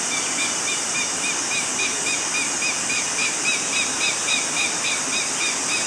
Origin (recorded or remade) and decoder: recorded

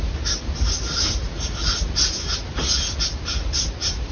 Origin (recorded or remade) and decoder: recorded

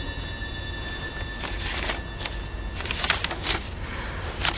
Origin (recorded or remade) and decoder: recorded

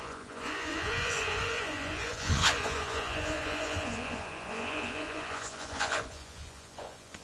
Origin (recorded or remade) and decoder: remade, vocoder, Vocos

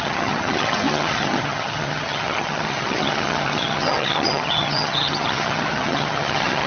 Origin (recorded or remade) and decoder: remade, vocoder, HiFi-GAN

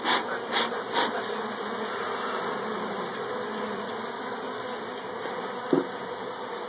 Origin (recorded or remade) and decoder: recorded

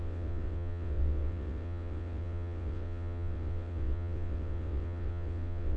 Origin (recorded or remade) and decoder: remade, vocoder, WaveNeXt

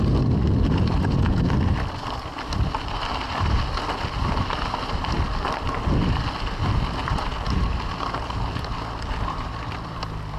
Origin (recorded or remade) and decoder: remade, vocoder, BigVGAN v2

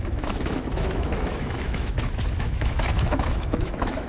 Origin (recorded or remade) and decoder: remade, autoencoder, DAC-VAE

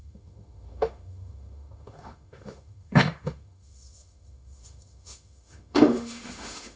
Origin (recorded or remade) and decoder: remade, autoencoder, DAC-VAE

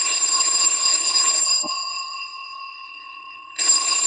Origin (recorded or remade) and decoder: remade, codec, HILCodec